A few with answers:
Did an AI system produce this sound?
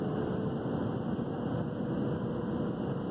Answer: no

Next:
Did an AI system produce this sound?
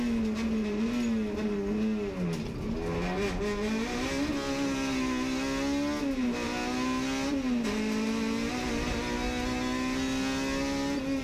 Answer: no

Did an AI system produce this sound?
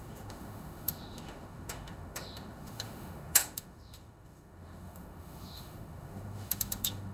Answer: yes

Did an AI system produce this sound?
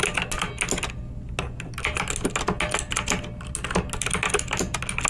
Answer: no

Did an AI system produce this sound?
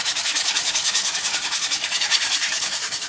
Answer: yes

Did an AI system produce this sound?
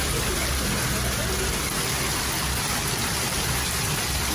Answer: no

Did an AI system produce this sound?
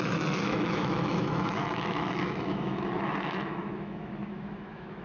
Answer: yes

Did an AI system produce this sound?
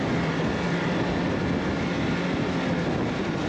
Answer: no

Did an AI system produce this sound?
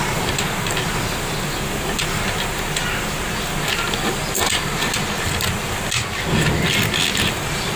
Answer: no